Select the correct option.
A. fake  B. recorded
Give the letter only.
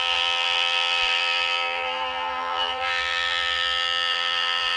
A